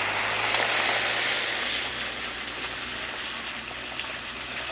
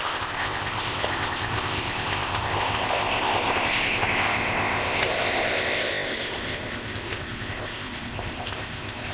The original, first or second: first